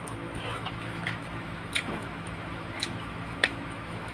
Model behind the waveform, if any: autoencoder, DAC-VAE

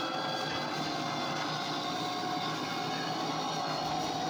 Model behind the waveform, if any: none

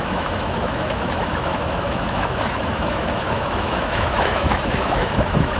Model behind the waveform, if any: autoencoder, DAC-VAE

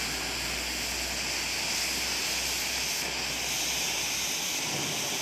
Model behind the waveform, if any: none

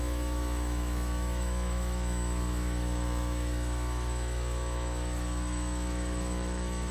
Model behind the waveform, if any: autoencoder, DAC-VAE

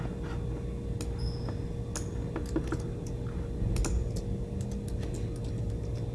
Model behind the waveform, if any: none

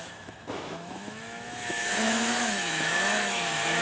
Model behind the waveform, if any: autoencoder, DAC-VAE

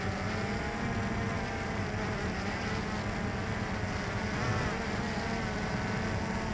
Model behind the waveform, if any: none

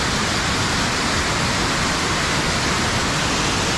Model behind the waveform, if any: none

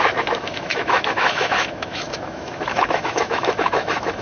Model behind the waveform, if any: autoencoder, DAC-VAE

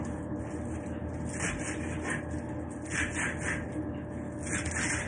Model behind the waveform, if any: none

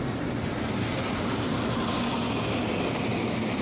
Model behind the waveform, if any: none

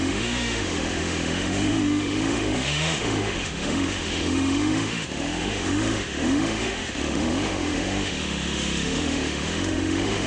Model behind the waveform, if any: autoencoder, DAC-VAE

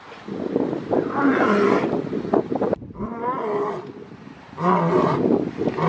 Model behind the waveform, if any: none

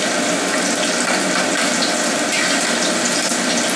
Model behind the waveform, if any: none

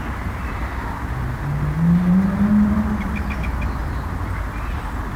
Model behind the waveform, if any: none